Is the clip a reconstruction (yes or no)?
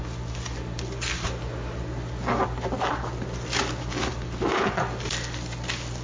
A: no